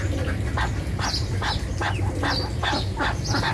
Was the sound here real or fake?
real